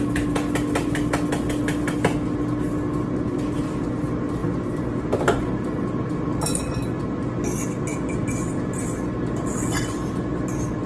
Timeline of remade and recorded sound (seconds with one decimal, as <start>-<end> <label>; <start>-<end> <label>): 0.0-4.4 recorded; 4.4-5.0 remade; 5.0-10.9 recorded